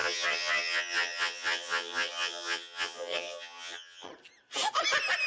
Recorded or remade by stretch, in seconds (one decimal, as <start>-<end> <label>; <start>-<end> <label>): 0.0-4.1 remade; 4.1-5.3 recorded